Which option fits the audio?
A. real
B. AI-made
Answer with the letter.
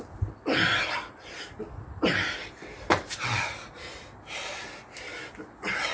A